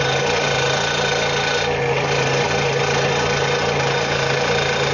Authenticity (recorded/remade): recorded